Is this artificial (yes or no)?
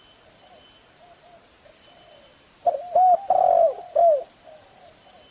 no